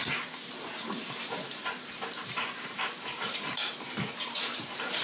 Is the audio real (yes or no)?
no